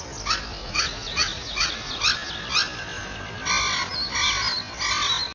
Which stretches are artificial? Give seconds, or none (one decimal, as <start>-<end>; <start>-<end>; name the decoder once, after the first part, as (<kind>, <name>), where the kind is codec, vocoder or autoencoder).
0.6-2.0 (vocoder, Vocos)